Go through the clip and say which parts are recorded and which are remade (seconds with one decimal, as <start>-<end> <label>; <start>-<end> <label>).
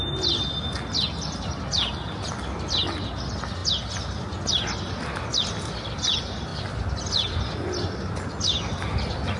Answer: 0.0-9.4 recorded